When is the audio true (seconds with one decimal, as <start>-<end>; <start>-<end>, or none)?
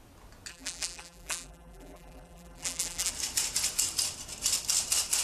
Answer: 0.0-0.5; 3.1-5.2